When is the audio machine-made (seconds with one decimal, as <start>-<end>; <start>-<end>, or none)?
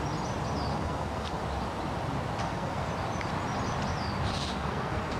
0.7-1.4; 2.4-2.9; 4.3-5.2